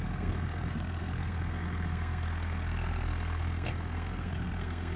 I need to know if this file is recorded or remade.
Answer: remade